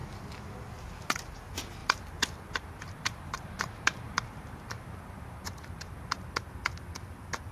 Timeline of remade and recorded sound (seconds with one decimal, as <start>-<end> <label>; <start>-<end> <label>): 0.0-1.8 recorded; 1.8-6.2 remade; 6.2-7.5 recorded